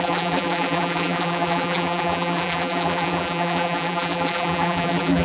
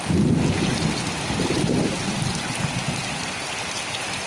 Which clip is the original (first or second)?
second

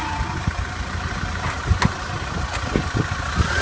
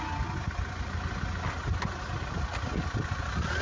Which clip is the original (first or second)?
second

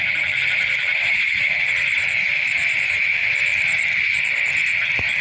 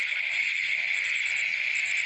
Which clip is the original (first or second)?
second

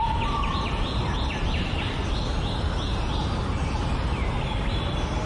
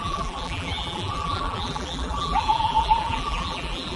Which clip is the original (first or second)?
first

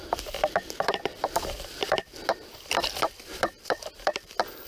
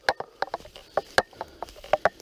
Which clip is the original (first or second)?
second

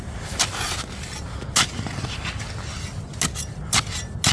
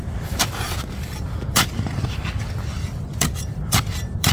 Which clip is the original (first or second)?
first